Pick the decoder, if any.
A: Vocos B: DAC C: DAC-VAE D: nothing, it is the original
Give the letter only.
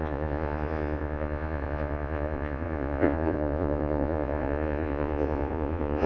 A